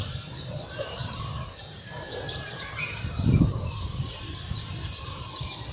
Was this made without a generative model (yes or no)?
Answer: no